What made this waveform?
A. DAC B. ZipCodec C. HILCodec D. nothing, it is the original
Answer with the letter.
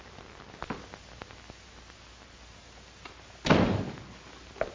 D